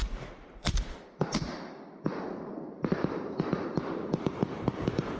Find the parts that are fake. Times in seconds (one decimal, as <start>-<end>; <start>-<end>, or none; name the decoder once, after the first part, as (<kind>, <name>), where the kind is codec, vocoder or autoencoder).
0.0-5.2 (vocoder, BigVGAN v2)

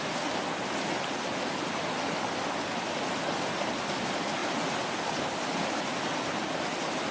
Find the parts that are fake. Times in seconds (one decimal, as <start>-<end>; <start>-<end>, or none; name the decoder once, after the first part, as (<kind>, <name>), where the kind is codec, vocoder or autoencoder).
none

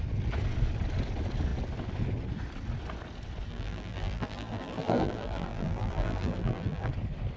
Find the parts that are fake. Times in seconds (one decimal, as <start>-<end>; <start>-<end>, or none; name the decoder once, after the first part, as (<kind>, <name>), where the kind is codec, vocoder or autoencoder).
3.5-6.9 (vocoder, BigVGAN v2)

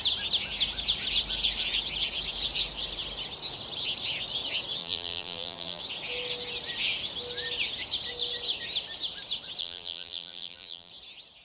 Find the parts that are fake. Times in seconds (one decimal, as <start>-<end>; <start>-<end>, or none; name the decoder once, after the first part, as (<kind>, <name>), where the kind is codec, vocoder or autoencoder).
4.8-5.8 (vocoder, BigVGAN v2); 9.6-10.9

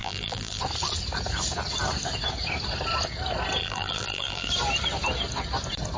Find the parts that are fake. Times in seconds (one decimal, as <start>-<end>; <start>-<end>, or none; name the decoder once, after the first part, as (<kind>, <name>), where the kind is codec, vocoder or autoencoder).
0.0-0.6 (vocoder, BigVGAN v2); 3.6-4.5